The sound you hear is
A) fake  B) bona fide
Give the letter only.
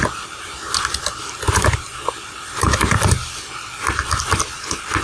B